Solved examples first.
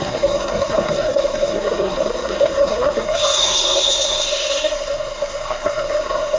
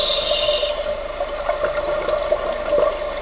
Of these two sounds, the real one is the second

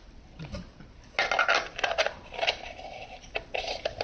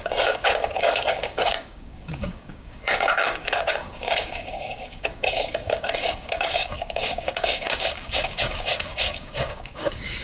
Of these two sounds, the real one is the first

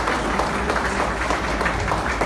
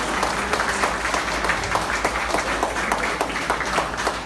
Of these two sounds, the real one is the second